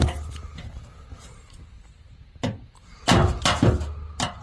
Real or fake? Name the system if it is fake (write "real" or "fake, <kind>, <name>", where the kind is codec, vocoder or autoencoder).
real